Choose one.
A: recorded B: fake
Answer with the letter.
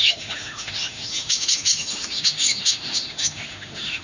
B